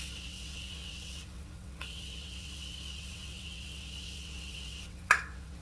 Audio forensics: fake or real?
fake